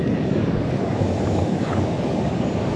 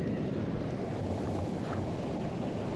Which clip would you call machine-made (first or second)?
first